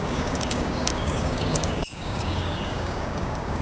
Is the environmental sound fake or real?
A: fake